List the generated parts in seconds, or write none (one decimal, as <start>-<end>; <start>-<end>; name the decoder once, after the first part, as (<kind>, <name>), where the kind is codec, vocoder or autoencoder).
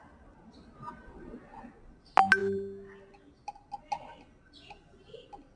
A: none